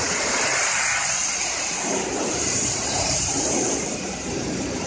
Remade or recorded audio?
remade